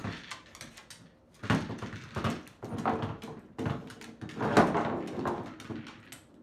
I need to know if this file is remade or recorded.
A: recorded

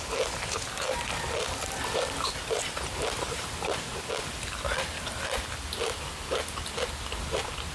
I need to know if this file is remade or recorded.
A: recorded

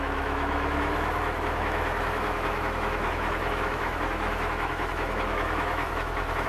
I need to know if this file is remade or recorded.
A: remade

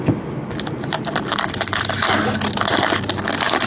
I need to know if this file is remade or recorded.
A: recorded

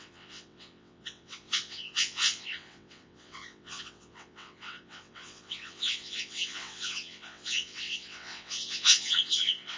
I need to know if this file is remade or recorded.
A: remade